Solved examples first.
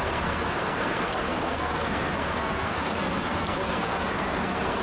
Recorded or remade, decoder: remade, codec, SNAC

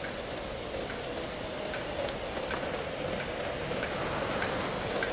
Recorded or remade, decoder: recorded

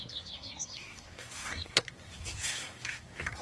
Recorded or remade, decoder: remade, codec, SNAC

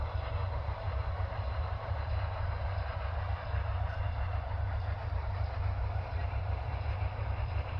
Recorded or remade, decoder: remade, vocoder, BigVGAN v2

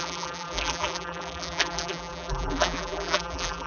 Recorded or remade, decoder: remade, vocoder, BigVGAN v2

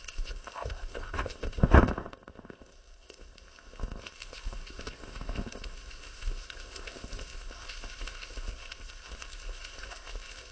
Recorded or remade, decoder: remade, codec, ZipCodec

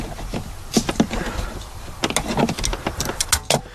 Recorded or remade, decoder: recorded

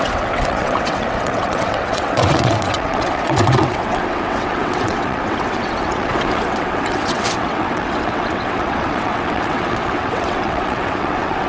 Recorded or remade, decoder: remade, vocoder, WaveNeXt